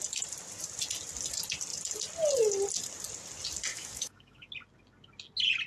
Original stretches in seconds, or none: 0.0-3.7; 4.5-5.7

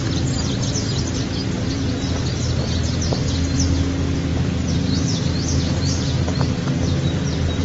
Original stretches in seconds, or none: 0.0-7.6